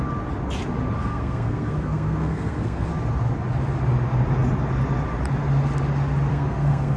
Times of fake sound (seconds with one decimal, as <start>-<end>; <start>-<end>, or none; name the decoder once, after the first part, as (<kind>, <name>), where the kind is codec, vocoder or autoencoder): 1.0-2.9 (codec, SNAC); 6.3-7.0